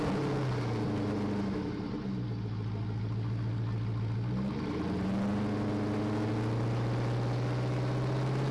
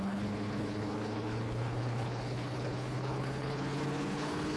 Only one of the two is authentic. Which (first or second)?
first